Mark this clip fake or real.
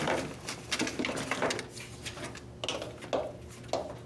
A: real